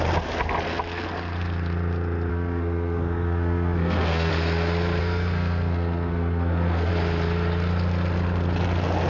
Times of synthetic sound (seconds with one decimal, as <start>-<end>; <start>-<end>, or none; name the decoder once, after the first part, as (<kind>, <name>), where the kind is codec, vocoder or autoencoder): 2.3-4.3 (codec, SNAC); 5.0-6.9